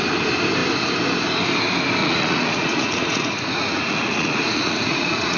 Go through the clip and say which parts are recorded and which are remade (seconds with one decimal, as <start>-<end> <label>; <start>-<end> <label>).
0.0-2.0 recorded; 2.0-5.4 remade